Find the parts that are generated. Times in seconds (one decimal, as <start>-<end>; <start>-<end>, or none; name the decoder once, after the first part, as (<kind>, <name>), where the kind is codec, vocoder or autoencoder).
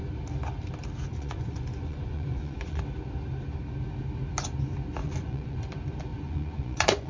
1.1-2.8 (vocoder, Vocos); 5.0-5.6; 6.1-7.1